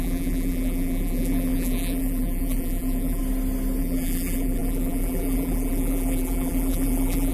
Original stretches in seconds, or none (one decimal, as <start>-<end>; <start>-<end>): 3.2-3.8